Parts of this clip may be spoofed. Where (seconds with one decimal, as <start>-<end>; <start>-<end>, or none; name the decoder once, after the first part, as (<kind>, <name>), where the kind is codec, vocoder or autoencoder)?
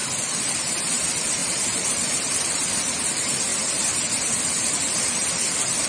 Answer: 0.0-3.5 (vocoder, BigVGAN v2); 4.4-5.9